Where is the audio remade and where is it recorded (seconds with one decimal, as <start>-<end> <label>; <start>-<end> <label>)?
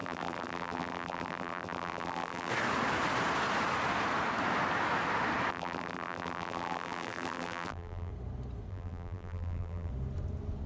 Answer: 0.0-2.5 remade; 2.5-5.5 recorded; 5.5-8.1 remade; 8.1-8.7 recorded; 8.7-9.9 remade; 9.9-10.7 recorded